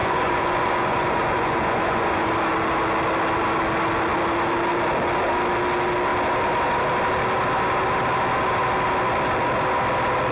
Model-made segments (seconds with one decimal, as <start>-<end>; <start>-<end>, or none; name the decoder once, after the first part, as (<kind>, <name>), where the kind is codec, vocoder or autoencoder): 0.0-2.3 (vocoder, Vocos)